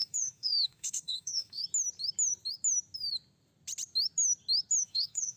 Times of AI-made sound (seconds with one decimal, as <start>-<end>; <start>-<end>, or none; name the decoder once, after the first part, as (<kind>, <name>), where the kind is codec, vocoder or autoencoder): 0.0-1.6 (autoencoder, DAC-VAE); 4.8-5.4